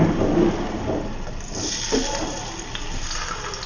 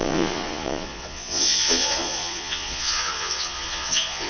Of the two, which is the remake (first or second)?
second